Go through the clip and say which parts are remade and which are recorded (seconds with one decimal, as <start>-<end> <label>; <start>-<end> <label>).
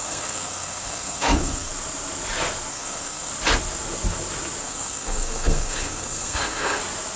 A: 0.0-1.7 remade; 1.7-2.7 recorded; 2.7-3.3 remade; 3.3-4.6 recorded; 4.6-6.8 remade; 6.8-7.2 recorded